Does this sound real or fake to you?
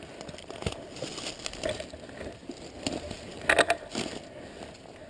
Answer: real